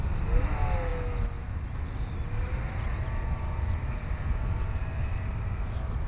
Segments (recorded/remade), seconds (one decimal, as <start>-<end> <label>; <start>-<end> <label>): 0.0-6.1 recorded